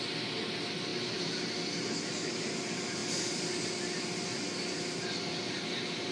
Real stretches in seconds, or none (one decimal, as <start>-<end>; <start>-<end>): 0.0-6.1